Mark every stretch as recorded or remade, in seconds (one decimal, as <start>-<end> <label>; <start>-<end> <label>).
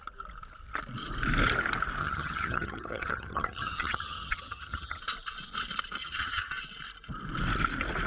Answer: 0.0-2.0 recorded; 2.0-5.0 remade; 5.0-6.0 recorded; 6.0-6.5 remade; 6.5-8.1 recorded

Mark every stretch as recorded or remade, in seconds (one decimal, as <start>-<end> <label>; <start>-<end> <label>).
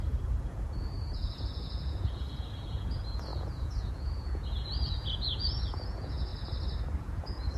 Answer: 0.0-6.3 remade; 6.3-7.0 recorded; 7.0-7.6 remade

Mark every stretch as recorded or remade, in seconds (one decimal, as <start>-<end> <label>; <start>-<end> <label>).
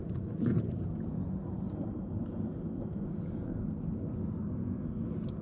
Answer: 0.0-0.8 remade; 0.8-5.4 recorded